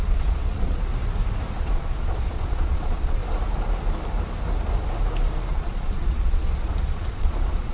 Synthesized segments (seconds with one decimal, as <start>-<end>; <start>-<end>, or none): 0.0-0.9; 1.6-3.2; 5.5-7.7